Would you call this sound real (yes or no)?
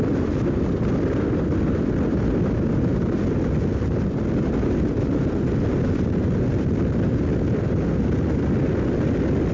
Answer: yes